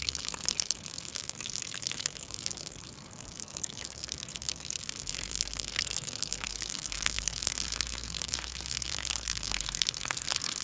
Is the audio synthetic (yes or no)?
yes